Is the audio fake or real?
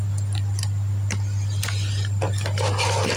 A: real